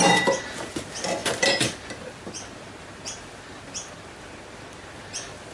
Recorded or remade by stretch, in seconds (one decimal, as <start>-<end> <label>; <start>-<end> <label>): 0.0-5.5 recorded